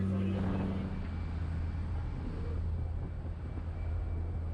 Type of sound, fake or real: real